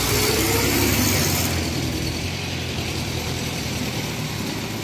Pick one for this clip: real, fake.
fake